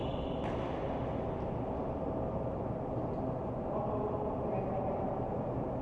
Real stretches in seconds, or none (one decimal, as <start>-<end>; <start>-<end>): 0.0-5.8